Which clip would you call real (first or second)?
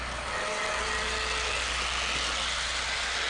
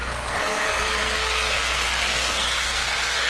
first